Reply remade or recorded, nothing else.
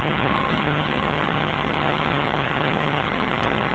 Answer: remade